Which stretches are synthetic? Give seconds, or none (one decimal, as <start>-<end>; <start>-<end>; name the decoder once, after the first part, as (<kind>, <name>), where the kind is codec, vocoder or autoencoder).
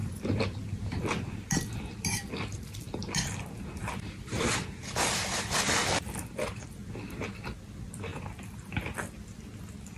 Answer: 0.0-3.0 (vocoder, BigVGAN v2); 4.2-6.8; 7.6-8.1